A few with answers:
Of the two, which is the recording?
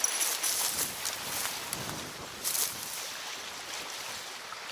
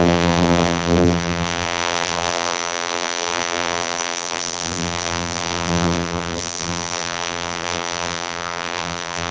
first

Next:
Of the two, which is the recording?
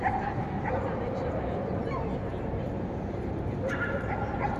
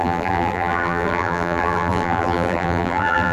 first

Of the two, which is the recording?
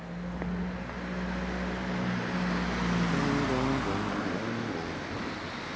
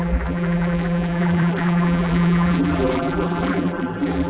first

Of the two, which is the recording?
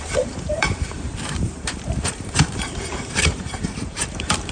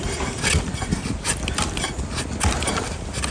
second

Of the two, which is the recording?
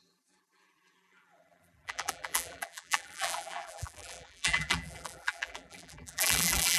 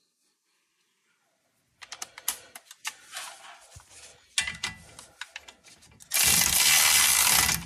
second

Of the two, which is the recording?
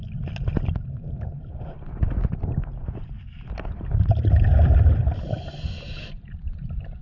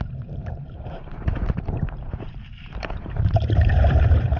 first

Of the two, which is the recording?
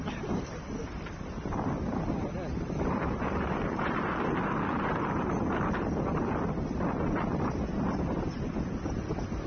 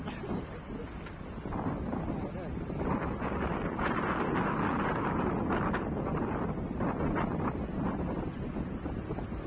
second